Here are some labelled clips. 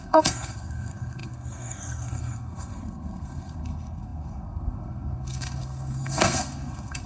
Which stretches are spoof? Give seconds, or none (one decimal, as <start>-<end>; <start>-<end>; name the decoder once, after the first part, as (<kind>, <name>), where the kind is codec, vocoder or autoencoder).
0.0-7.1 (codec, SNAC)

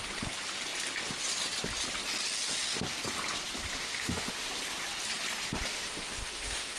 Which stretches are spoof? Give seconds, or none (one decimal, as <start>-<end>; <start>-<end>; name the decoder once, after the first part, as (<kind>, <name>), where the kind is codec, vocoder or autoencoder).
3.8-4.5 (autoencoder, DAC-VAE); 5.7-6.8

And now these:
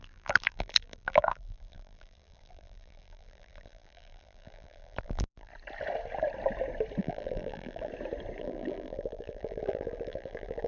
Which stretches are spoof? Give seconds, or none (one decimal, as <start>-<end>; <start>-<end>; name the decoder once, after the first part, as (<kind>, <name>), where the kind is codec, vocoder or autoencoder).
0.0-5.5 (vocoder, BigVGAN v2); 7.0-7.9; 8.4-10.7

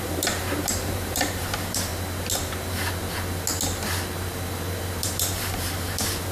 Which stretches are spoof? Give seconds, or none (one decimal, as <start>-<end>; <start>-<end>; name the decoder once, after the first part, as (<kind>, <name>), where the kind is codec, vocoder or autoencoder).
0.0-1.9 (vocoder, BigVGAN v2); 5.0-6.3

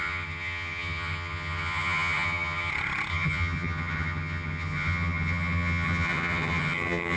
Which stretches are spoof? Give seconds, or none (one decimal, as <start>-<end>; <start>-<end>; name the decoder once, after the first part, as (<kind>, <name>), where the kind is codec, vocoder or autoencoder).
0.0-2.7 (vocoder, HiFi-GAN); 3.1-7.2

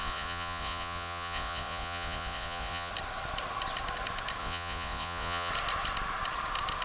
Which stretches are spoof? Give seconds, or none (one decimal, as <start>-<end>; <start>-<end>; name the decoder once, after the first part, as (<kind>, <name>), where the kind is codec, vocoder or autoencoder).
0.0-2.9 (vocoder, Vocos); 4.4-5.5